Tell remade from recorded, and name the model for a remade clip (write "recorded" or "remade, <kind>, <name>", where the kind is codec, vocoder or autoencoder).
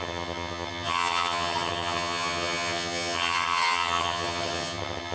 remade, vocoder, HiFi-GAN